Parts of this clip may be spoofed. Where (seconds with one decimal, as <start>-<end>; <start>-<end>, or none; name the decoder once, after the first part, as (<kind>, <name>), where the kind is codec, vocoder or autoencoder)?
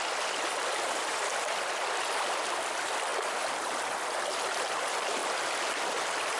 none